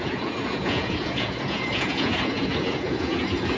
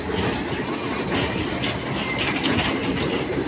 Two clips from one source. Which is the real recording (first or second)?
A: second